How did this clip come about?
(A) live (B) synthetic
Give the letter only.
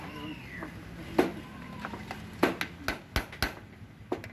A